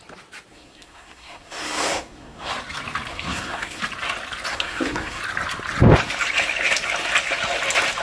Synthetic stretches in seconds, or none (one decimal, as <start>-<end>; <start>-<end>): 0.5-2.5; 3.1-3.8; 4.5-5.2